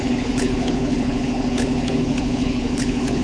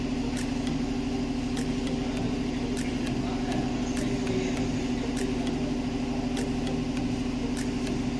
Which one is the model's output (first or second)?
first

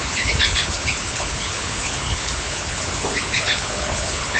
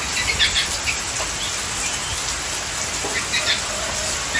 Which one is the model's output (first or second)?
first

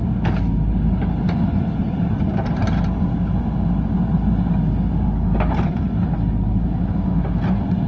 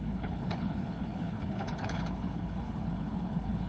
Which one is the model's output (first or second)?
second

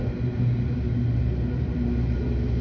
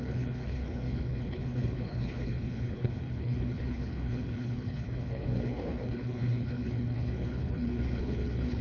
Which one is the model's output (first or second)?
second